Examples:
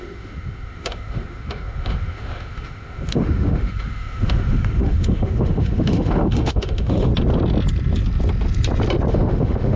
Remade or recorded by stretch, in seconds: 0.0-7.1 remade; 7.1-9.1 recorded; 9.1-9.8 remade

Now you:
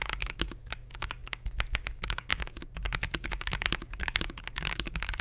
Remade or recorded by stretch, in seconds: 0.0-5.2 remade

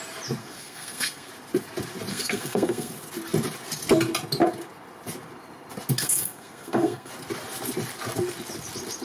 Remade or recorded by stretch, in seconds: 0.0-0.4 recorded; 0.4-1.3 remade; 1.3-2.1 recorded; 2.1-2.9 remade; 2.9-6.0 recorded; 6.0-7.1 remade; 7.1-9.0 recorded

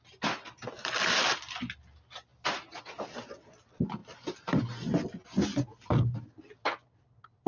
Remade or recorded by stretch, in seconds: 0.0-7.5 recorded

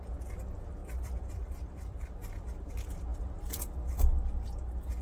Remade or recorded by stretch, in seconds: 0.0-0.8 recorded; 0.8-2.7 remade; 2.7-5.0 recorded

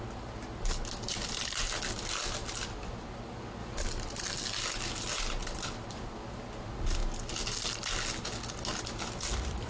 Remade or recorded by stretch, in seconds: 0.0-3.6 recorded; 3.6-4.2 remade; 4.2-5.4 recorded; 5.4-6.1 remade; 6.1-9.7 recorded

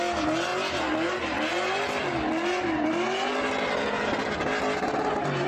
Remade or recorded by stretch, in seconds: 0.0-5.5 recorded